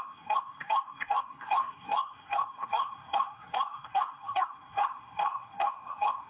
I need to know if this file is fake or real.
fake